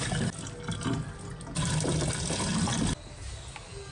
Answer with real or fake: real